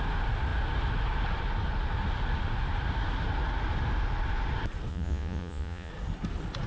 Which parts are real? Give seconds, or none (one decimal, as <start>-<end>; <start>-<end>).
0.0-4.9; 5.9-6.7